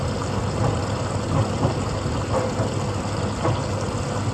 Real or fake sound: real